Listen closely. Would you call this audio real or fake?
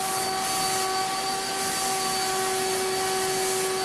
real